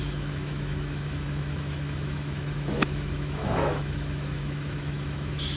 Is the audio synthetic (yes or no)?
yes